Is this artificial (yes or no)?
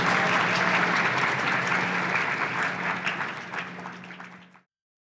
no